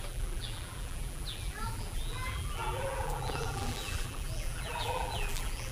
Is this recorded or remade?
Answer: remade